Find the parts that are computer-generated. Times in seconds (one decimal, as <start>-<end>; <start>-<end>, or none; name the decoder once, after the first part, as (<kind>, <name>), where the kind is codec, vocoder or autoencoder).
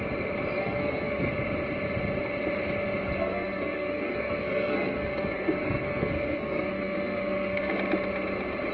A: 0.6-1.3 (codec, SNAC); 3.2-7.7